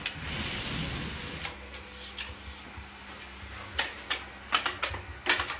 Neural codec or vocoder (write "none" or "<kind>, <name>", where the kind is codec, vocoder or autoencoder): none